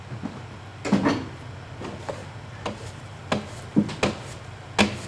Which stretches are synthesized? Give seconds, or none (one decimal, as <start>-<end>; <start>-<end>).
2.2-3.2